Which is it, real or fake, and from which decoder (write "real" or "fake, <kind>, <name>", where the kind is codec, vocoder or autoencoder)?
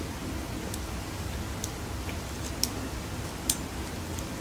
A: real